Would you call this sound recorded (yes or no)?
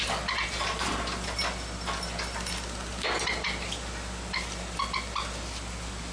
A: yes